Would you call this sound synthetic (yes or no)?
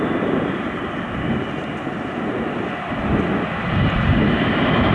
no